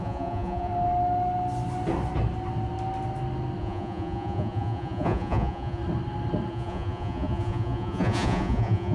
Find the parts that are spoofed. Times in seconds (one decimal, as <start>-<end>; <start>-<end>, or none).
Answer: 0.0-0.7; 3.6-5.8; 6.5-8.9